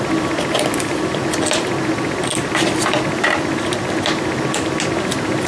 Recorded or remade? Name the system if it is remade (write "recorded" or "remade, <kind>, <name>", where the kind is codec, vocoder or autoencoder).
recorded